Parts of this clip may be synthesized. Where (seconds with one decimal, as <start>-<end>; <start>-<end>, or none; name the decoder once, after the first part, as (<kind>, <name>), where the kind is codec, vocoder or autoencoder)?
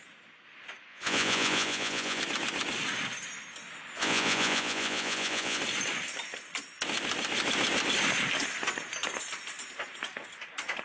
0.9-2.2 (vocoder, Vocos); 4.0-5.6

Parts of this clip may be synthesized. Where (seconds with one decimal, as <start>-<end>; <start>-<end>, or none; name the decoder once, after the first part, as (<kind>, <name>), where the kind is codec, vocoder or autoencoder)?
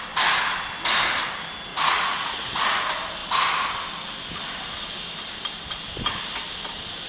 1.7-2.8 (vocoder, Vocos)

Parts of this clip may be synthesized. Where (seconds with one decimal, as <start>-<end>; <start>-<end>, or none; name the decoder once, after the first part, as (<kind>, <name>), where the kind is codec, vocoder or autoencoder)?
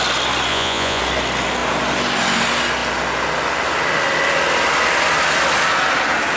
0.5-1.0 (vocoder, Vocos)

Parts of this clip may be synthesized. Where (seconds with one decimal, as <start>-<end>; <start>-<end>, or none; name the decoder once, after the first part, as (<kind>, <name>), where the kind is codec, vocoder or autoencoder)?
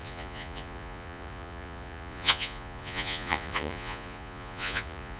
0.0-5.2 (vocoder, Vocos)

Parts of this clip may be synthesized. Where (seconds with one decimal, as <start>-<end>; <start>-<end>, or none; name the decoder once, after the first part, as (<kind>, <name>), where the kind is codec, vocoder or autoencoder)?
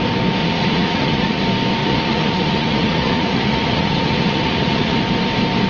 0.4-1.4 (vocoder, Vocos); 1.8-5.0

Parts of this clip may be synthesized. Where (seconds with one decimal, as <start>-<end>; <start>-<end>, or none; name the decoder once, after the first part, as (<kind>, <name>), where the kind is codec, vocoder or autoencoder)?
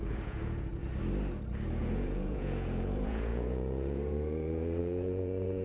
0.0-0.8 (vocoder, Vocos); 1.8-5.6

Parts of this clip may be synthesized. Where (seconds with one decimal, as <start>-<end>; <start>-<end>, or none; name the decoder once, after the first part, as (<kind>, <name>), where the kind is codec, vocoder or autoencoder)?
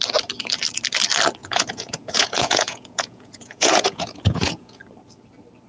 1.4-4.8 (vocoder, Vocos)